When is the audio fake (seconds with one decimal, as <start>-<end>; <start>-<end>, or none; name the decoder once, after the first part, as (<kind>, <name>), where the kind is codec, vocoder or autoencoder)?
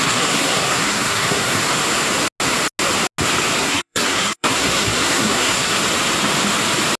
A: 0.0-1.6 (codec, SNAC); 3.6-5.8